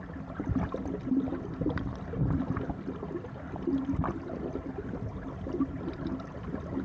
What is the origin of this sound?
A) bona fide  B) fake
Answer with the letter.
A